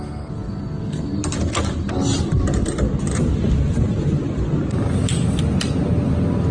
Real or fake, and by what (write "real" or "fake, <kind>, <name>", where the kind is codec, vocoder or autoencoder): real